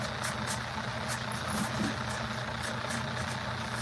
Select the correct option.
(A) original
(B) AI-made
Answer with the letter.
A